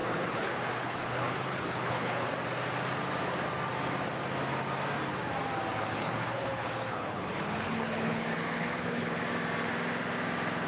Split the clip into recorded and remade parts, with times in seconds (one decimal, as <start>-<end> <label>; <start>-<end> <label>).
0.0-2.3 remade; 2.3-5.9 recorded; 5.9-9.2 remade; 9.2-10.7 recorded